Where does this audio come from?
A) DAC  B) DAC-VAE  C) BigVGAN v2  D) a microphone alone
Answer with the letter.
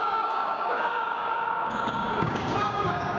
A